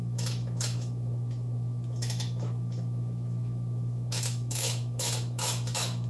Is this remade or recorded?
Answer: remade